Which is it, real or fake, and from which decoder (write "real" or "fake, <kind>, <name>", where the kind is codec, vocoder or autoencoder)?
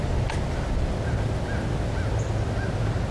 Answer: real